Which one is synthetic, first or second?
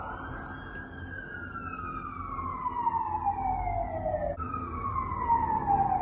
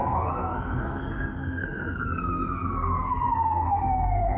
second